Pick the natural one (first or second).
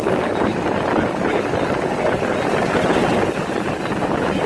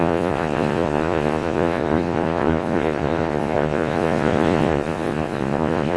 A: first